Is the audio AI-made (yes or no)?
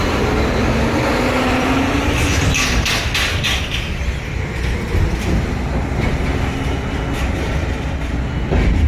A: no